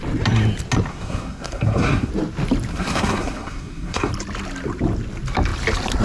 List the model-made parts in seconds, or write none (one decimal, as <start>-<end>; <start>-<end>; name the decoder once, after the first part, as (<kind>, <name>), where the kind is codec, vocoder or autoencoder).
0.9-2.1 (codec, SNAC); 2.7-4.1